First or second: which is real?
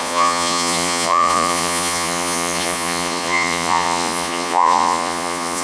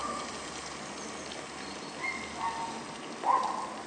second